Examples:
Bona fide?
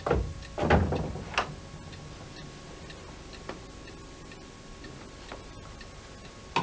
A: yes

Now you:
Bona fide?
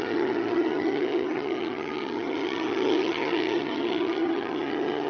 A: no